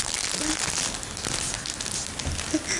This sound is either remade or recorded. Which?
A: recorded